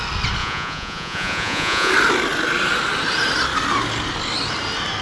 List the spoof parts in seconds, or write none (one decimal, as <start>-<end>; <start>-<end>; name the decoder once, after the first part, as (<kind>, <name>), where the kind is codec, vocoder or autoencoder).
0.4-1.9 (vocoder, Vocos)